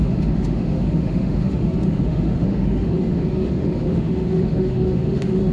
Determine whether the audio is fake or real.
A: fake